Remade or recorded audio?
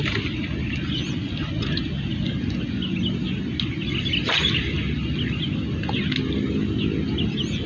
recorded